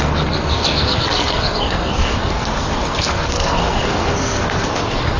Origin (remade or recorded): remade